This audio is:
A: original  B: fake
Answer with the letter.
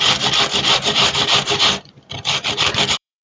B